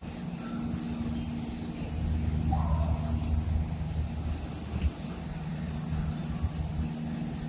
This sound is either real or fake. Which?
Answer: real